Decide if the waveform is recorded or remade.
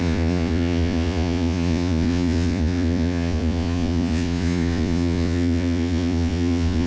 remade